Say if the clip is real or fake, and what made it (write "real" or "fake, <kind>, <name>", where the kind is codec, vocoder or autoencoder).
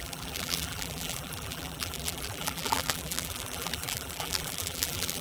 fake, vocoder, BigVGAN v2